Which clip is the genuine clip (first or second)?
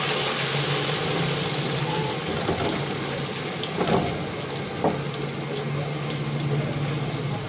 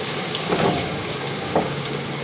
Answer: first